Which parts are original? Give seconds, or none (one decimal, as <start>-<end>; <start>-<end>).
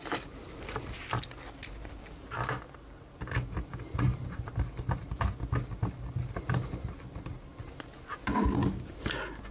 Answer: 0.0-9.5